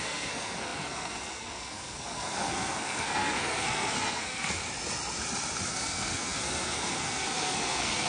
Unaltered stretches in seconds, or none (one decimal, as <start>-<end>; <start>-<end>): 4.6-5.7